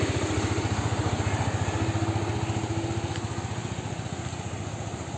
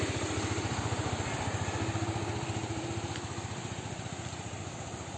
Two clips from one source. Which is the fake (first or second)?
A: second